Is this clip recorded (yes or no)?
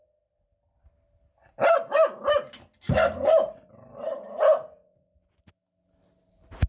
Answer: yes